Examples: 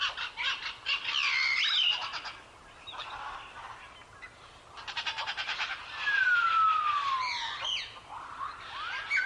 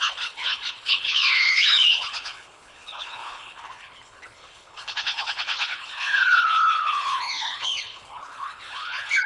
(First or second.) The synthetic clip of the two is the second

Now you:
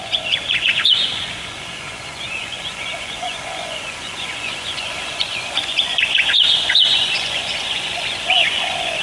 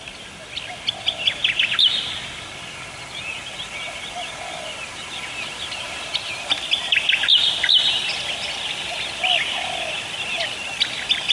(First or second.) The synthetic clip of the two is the first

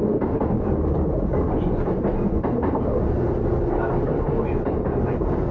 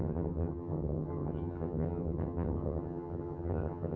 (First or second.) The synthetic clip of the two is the second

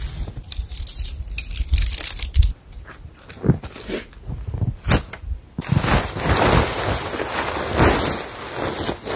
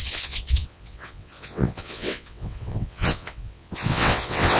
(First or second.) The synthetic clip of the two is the second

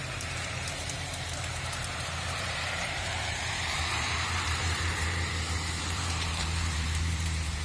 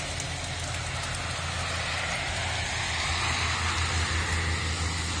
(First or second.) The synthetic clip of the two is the first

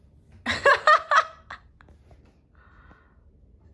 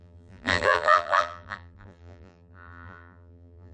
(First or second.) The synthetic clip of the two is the second